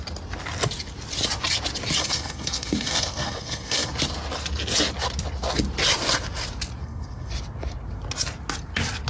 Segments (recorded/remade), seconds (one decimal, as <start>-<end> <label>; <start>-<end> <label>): 0.0-2.0 recorded; 2.0-3.9 remade; 3.9-6.8 recorded; 6.8-7.3 remade; 7.3-9.1 recorded